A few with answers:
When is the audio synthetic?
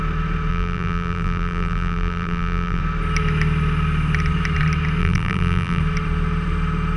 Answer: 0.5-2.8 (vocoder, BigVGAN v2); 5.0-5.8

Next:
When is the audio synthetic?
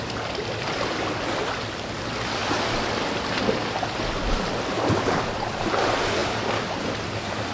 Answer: none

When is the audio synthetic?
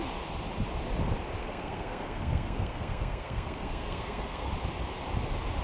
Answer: 1.4-4.5 (codec, SNAC)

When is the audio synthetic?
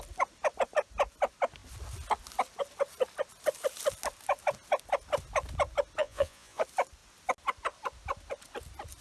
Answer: 6.0-6.6 (vocoder, Vocos)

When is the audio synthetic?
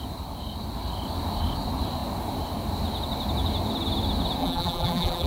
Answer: 4.4-5.3 (vocoder, BigVGAN v2)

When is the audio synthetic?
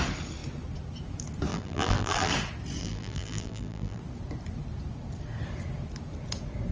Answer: 1.5-2.3 (vocoder, BigVGAN v2); 2.8-4.0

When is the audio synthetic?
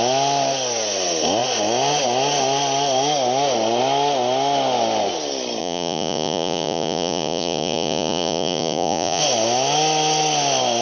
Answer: 5.6-9.2 (vocoder, Vocos)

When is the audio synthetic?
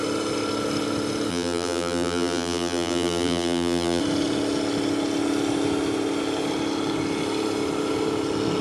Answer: 1.3-4.0 (vocoder, BigVGAN v2)